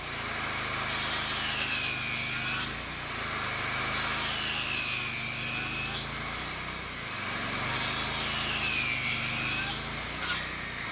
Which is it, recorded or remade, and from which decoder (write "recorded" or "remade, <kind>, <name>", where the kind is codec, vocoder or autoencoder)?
recorded